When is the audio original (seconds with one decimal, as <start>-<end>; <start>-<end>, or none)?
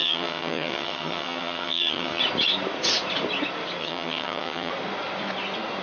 2.2-3.8; 4.7-5.8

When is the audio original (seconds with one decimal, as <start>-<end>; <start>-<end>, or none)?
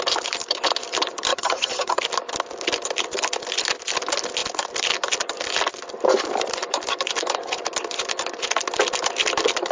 0.0-1.3; 2.0-9.7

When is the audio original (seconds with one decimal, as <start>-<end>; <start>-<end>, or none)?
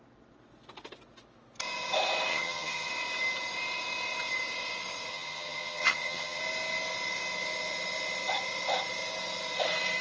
0.0-2.3; 2.9-5.1; 6.4-10.0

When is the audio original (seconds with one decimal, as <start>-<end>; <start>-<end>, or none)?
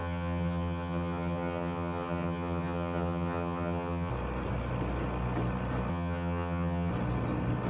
4.1-5.9; 6.9-7.7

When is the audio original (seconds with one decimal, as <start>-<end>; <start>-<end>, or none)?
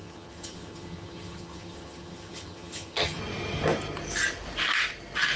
3.2-5.4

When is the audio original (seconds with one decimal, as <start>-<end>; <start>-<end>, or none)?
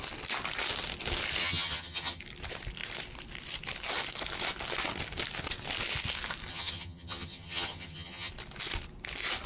0.0-1.4; 2.2-6.5; 8.3-9.5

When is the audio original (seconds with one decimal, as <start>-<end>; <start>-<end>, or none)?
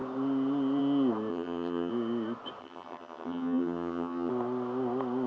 0.0-1.3; 1.9-2.6; 4.3-5.3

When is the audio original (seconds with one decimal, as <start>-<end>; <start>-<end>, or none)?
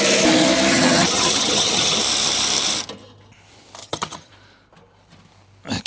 0.0-0.7; 2.0-3.8; 4.3-5.9